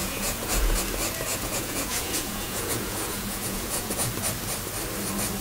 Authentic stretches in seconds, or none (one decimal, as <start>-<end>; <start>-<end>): 0.8-1.3; 4.1-5.4